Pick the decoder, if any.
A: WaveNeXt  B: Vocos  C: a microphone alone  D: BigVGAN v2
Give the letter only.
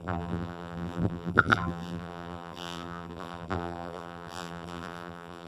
D